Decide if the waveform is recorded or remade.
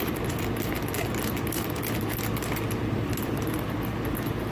recorded